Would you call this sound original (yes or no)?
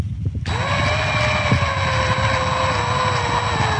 yes